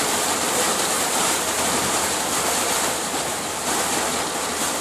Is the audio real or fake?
fake